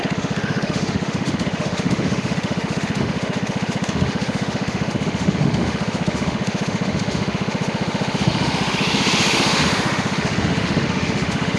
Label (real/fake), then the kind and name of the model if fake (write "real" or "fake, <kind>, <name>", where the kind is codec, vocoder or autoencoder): fake, autoencoder, DAC-VAE